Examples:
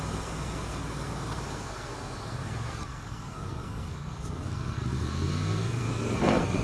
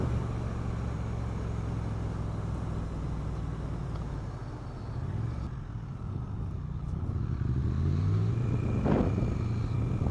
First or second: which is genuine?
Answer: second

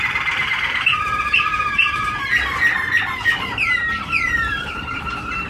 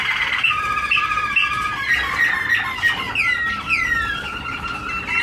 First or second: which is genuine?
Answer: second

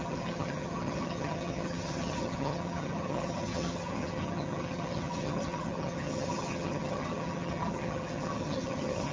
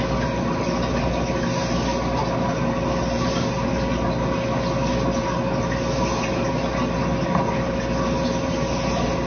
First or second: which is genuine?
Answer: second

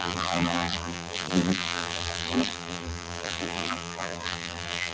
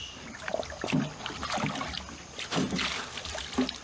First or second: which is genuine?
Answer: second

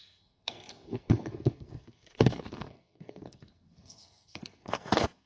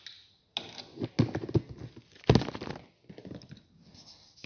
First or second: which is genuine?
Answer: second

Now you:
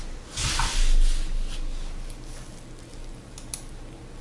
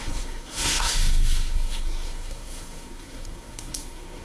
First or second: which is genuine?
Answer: first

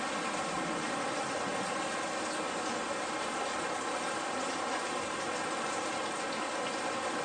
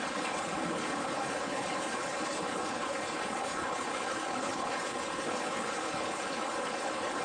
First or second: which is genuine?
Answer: first